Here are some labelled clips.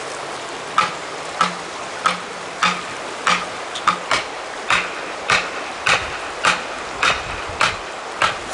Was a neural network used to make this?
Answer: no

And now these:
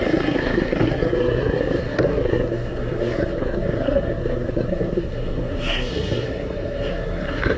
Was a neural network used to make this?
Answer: yes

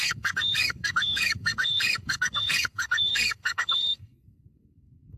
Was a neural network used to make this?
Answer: yes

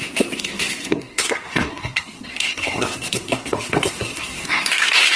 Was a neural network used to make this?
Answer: yes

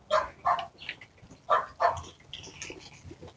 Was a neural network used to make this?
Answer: no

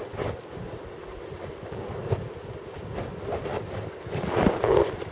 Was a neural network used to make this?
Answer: no